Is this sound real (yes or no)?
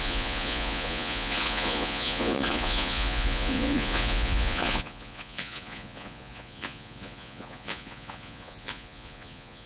no